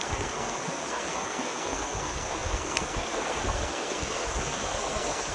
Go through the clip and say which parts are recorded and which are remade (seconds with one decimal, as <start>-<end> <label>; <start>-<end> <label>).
0.0-5.3 remade